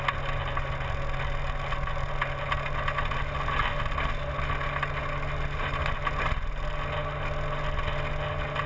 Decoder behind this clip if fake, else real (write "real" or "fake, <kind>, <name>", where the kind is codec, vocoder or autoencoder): real